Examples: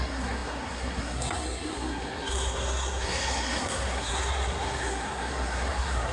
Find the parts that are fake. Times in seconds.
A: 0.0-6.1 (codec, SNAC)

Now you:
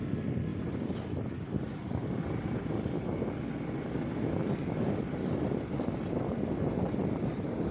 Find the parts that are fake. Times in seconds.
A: none

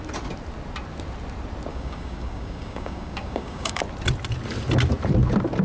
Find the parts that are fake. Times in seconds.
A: 1.7-3.8 (codec, DAC)

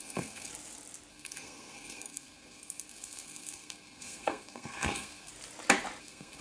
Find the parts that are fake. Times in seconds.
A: 0.0-0.5 (codec, SNAC); 1.1-5.3; 6.0-6.4

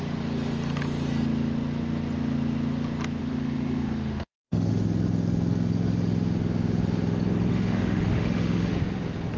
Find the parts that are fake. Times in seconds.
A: 3.2-4.7 (autoencoder, DAC-VAE); 7.5-8.7